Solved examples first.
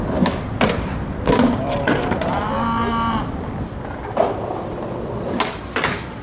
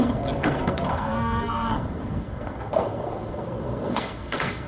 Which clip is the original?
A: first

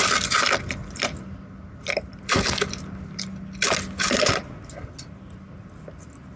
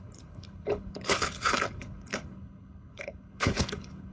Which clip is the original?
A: first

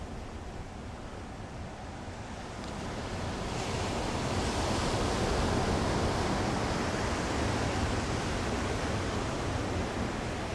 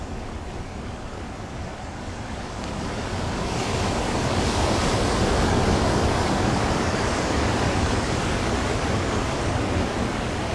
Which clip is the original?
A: first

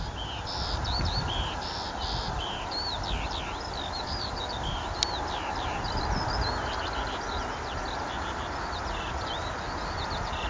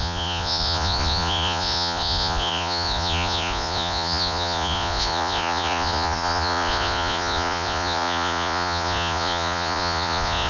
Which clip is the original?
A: first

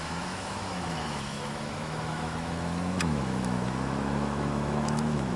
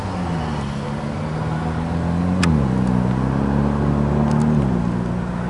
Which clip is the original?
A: second